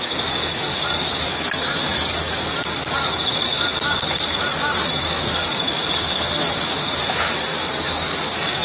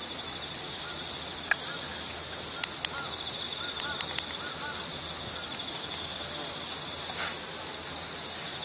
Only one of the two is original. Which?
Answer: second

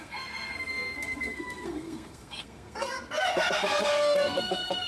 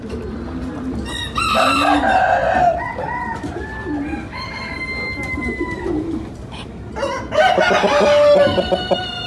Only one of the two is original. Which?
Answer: second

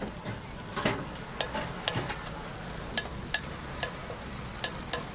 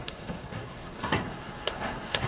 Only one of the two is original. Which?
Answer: first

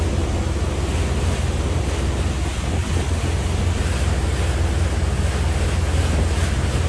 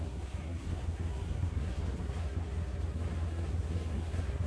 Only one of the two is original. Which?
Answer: first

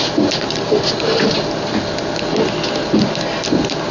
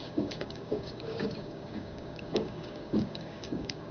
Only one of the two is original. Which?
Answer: first